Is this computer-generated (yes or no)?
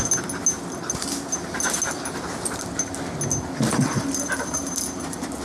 no